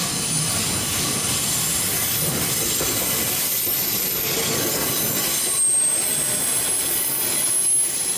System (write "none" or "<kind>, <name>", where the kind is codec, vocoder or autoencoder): none